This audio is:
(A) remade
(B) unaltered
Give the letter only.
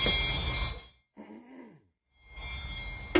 B